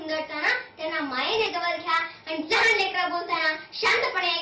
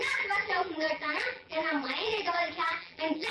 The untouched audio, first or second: first